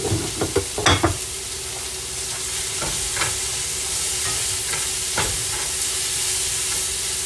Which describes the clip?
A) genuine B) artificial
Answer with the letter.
A